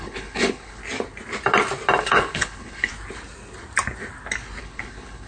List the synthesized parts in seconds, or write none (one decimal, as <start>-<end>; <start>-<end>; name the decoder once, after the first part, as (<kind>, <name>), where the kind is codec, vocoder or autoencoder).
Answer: 0.0-0.8 (codec, HILCodec); 2.0-2.9; 4.6-5.3